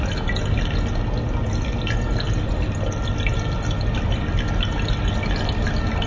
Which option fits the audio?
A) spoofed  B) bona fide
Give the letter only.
B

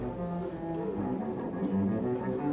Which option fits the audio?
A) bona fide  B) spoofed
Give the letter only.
A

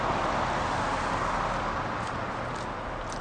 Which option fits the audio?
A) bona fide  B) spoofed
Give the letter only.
A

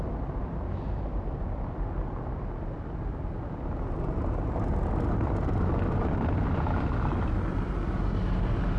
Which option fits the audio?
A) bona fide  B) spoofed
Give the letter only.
A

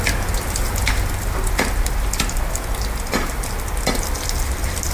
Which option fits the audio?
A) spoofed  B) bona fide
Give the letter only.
B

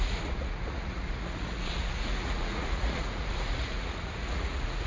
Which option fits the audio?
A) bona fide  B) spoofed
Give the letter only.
B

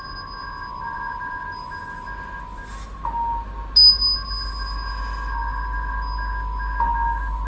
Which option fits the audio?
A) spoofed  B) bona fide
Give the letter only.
B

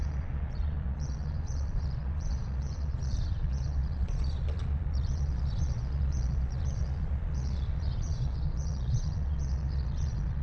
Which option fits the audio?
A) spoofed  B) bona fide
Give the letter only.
A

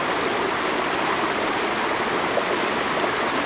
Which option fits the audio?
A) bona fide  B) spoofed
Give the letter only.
A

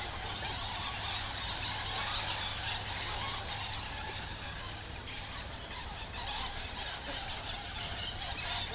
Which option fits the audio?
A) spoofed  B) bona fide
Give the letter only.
B